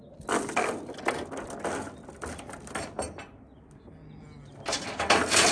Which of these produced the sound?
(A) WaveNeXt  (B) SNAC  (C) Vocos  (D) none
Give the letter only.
D